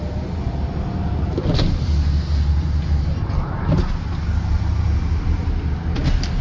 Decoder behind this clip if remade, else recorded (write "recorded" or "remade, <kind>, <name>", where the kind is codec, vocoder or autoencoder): recorded